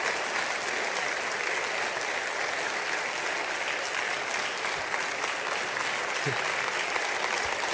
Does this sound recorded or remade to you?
recorded